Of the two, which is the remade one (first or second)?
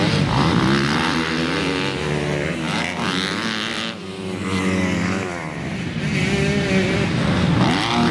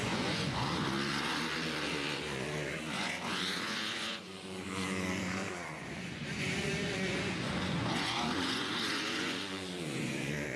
second